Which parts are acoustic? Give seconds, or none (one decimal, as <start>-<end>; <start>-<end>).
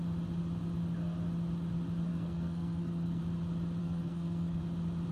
0.0-2.1; 3.2-3.8; 4.6-5.1